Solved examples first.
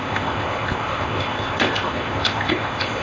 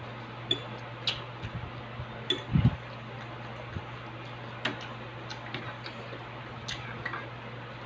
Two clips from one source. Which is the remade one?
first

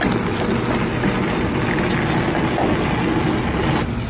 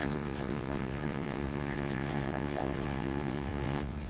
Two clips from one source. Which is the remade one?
second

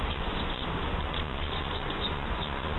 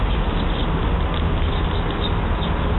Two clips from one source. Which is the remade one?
first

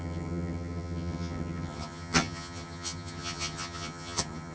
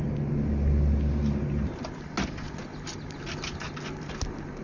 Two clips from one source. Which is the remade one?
first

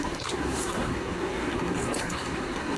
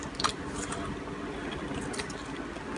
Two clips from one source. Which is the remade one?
first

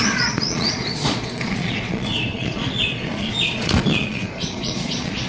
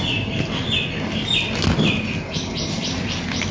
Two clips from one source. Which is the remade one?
first